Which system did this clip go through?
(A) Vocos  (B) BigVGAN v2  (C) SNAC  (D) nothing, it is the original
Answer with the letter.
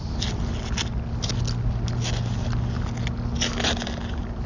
D